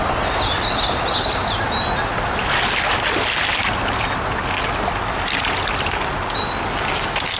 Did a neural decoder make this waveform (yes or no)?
no